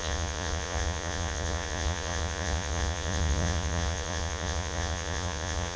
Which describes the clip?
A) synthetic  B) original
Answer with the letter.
A